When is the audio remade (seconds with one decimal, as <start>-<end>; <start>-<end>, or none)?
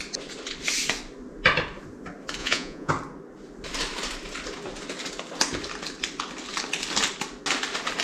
2.4-2.9